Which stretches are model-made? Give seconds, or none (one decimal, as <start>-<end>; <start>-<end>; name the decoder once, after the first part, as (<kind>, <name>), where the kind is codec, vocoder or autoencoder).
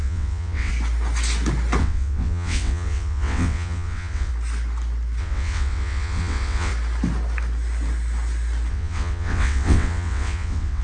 0.0-0.7 (vocoder, WaveNeXt); 1.8-4.3; 5.2-6.7; 8.7-10.8